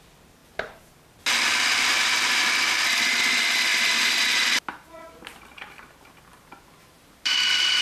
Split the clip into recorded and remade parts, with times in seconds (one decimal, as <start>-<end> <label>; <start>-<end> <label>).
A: 0.0-3.7 recorded; 3.7-7.8 remade